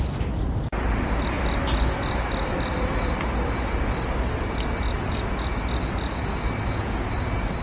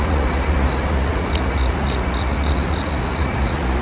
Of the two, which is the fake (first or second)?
second